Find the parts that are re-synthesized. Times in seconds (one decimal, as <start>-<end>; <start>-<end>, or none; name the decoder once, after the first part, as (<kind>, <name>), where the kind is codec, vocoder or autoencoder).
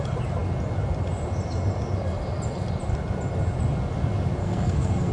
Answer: 4.4-5.1 (codec, SNAC)